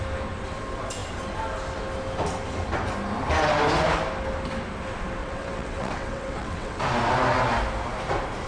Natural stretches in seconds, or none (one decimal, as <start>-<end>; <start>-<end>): 0.0-5.2; 6.8-8.5